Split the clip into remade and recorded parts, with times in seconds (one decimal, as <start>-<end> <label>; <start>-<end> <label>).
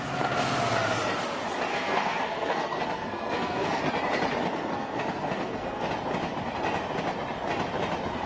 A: 0.0-1.7 recorded; 1.7-3.8 remade; 3.8-4.5 recorded; 4.5-5.9 remade; 5.9-8.3 recorded